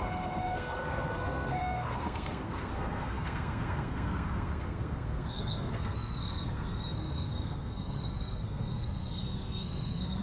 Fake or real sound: fake